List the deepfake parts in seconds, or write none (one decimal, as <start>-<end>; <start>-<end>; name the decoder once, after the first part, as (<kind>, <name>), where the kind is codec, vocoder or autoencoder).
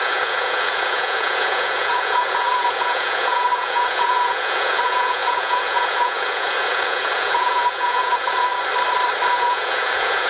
0.0-8.5 (vocoder, Vocos); 9.3-10.3